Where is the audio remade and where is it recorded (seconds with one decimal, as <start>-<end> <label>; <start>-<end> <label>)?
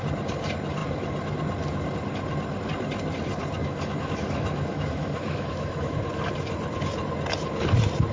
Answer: 0.0-3.6 recorded; 3.6-6.0 remade; 6.0-8.1 recorded